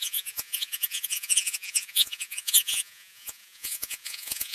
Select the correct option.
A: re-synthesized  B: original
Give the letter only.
A